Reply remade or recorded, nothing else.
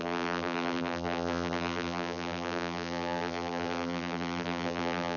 remade